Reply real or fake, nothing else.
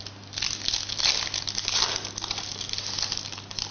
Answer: real